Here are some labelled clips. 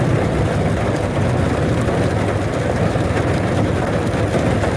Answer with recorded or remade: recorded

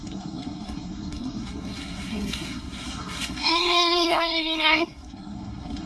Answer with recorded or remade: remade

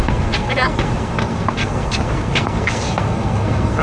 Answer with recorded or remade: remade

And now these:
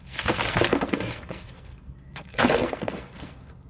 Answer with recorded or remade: remade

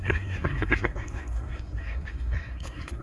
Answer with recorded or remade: remade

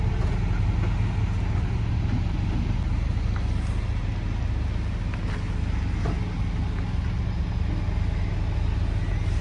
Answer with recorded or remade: recorded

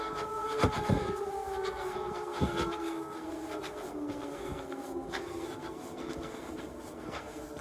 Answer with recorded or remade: remade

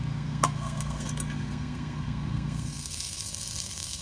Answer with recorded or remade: remade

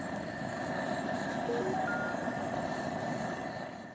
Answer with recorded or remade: recorded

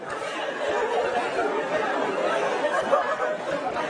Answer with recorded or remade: recorded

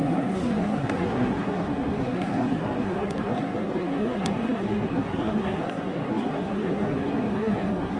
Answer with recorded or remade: remade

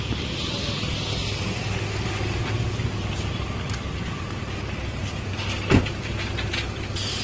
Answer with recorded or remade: recorded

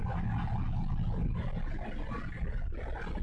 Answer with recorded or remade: recorded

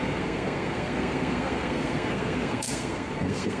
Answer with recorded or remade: remade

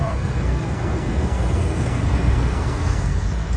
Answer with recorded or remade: remade